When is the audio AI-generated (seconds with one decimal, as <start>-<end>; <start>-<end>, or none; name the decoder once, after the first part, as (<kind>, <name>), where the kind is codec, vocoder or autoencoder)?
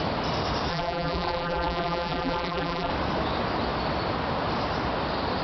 0.7-2.9 (vocoder, BigVGAN v2)